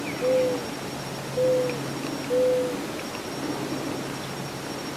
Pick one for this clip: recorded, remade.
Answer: recorded